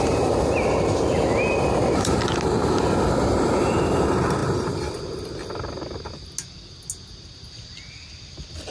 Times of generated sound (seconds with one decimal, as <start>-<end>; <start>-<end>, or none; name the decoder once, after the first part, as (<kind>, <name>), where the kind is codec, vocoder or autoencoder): none